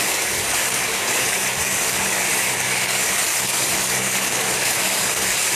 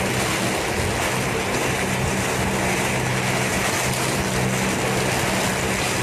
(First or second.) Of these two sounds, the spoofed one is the first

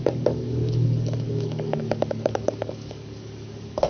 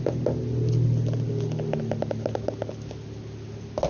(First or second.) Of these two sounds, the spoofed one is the first